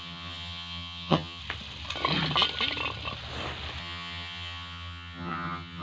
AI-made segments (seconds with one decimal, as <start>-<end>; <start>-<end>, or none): 0.0-1.4; 3.8-5.8